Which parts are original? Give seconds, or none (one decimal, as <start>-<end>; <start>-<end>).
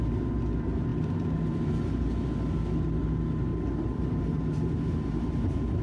0.0-0.9; 1.7-3.5